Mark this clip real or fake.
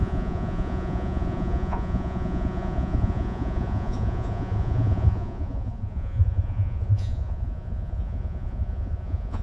fake